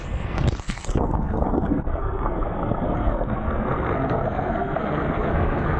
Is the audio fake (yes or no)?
yes